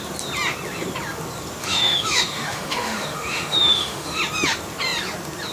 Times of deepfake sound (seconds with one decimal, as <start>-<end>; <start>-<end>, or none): 1.6-4.2